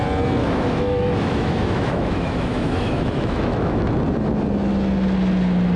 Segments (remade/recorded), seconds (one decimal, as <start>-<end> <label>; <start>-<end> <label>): 0.0-0.4 recorded; 0.4-3.9 remade; 3.9-5.8 recorded

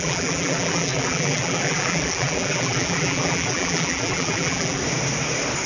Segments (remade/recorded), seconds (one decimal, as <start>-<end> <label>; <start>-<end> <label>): 0.0-4.8 remade; 4.8-5.7 recorded